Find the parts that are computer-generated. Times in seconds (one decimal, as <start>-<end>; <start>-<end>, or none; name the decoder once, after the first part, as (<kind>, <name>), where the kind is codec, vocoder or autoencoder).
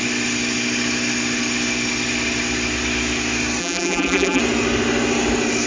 3.6-4.4 (vocoder, BigVGAN v2)